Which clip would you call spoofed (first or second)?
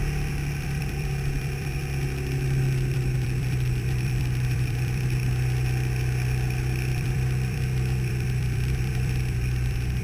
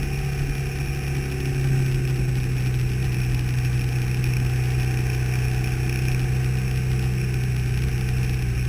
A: first